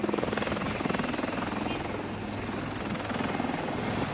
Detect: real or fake real